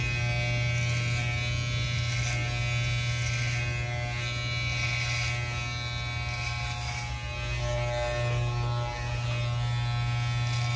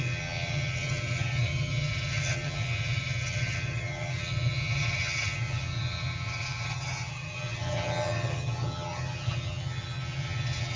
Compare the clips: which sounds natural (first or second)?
first